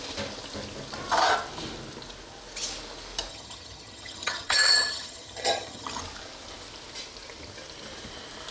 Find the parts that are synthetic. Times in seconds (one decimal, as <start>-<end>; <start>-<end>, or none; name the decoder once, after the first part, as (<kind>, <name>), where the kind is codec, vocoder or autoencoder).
3.3-6.0 (vocoder, HiFi-GAN)